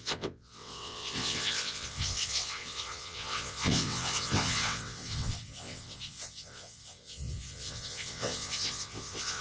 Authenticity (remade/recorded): remade